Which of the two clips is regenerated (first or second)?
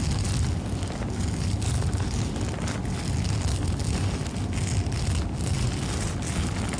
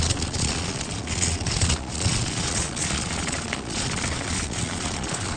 second